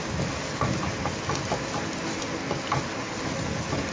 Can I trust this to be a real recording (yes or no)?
yes